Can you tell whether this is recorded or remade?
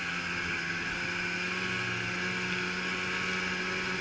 recorded